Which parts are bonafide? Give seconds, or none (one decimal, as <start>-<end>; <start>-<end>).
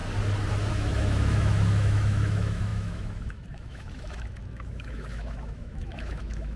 0.0-0.7